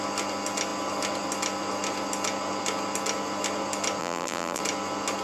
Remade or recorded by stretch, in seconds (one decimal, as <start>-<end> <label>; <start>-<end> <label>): 0.0-4.0 recorded; 4.0-4.6 remade; 4.6-5.2 recorded